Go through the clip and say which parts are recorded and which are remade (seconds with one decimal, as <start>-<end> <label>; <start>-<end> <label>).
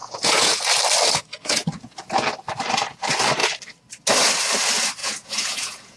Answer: 0.0-0.6 remade; 0.6-1.4 recorded; 1.4-2.1 remade; 2.1-5.0 recorded; 5.0-6.0 remade